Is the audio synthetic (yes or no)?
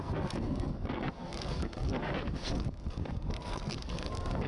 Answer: yes